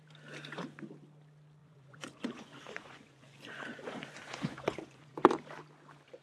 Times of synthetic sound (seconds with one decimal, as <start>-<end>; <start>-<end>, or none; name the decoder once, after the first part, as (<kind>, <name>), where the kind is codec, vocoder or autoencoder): 1.6-5.3 (vocoder, Vocos)